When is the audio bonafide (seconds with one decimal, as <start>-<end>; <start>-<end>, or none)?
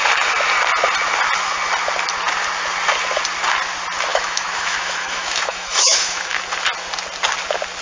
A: 0.0-4.1; 6.4-7.8